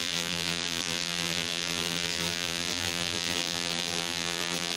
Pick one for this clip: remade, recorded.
remade